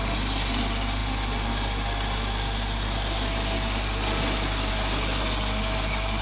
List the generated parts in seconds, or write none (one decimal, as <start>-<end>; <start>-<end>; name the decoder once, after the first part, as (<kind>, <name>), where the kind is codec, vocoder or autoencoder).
none

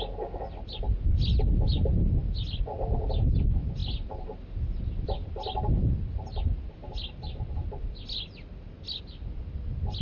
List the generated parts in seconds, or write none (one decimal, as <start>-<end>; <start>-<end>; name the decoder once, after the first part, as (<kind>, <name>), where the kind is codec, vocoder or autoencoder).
none